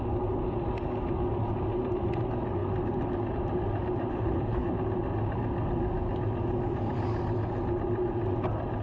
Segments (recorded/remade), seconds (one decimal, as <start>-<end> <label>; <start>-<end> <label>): 0.0-4.1 recorded; 4.1-4.7 remade; 4.7-8.8 recorded